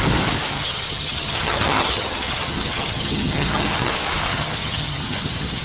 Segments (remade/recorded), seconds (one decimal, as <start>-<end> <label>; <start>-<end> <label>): 0.0-0.5 recorded; 0.5-3.9 remade; 3.9-4.3 recorded; 4.3-5.6 remade